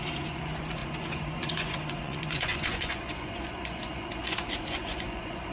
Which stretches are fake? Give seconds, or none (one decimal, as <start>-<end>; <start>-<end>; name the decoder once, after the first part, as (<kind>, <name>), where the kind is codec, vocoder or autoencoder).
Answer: 0.0-5.5 (vocoder, Vocos)